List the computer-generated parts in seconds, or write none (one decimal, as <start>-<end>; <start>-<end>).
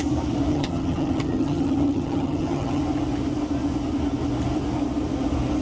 0.5-2.8